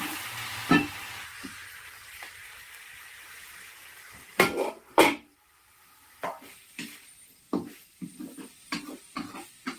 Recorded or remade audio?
recorded